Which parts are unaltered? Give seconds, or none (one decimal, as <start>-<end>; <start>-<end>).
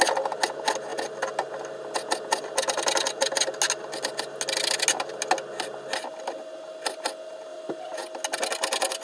0.0-7.5; 8.0-9.0